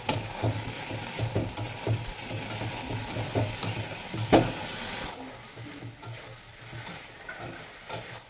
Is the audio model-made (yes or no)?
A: no